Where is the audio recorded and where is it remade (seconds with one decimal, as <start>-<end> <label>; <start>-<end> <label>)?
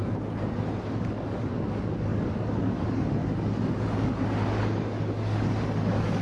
0.0-1.1 recorded; 1.1-6.2 remade